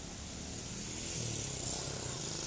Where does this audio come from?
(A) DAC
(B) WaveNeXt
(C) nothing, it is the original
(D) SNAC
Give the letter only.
C